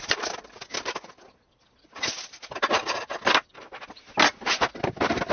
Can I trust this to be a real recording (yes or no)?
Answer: yes